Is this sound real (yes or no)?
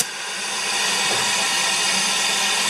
yes